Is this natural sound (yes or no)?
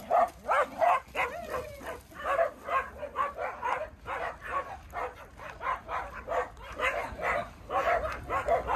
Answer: yes